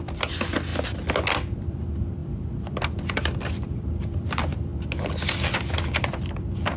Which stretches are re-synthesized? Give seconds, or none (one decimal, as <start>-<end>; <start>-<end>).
0.0-0.7; 1.6-4.7; 6.0-6.8

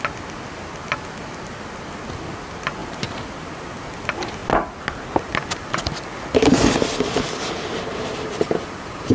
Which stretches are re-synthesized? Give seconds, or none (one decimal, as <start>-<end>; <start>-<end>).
7.9-9.1

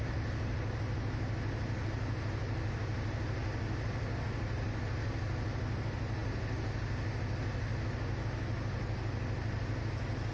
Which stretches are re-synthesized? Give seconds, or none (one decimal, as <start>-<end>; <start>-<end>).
none